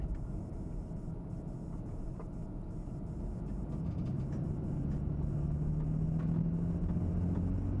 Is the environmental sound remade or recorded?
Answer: recorded